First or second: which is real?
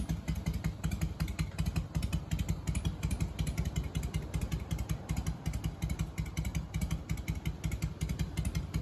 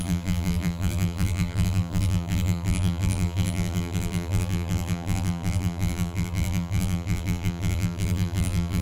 first